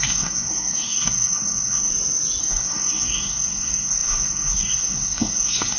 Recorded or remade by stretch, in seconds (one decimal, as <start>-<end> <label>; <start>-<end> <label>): 0.0-1.9 remade; 1.9-2.4 recorded; 2.4-5.8 remade